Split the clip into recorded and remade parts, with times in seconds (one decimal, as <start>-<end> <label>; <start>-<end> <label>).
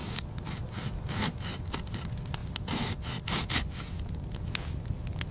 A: 0.0-5.3 recorded